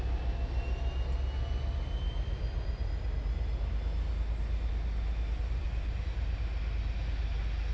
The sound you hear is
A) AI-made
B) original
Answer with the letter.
B